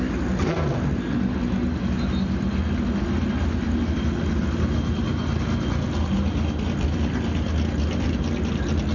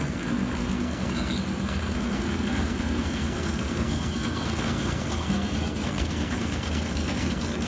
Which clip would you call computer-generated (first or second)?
second